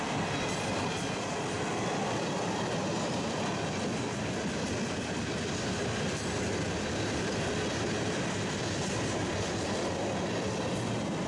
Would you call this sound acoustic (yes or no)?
yes